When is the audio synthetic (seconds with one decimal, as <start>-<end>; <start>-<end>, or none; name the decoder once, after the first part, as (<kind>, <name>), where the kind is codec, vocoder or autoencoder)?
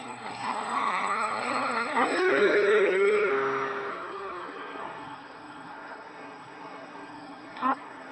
0.0-3.3 (codec, SNAC); 3.9-8.1